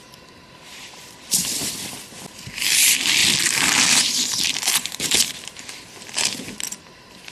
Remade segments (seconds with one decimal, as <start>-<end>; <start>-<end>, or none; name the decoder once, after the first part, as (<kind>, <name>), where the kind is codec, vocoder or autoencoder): none